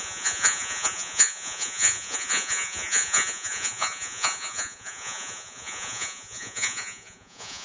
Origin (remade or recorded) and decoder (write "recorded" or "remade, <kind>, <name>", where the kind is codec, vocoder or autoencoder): remade, vocoder, Vocos